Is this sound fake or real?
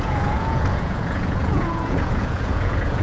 fake